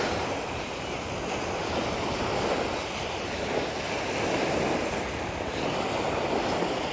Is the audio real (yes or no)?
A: yes